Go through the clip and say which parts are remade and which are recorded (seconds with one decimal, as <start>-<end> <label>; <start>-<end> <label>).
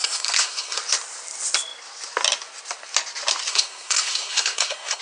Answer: 0.0-0.8 remade; 0.8-3.5 recorded; 3.5-5.0 remade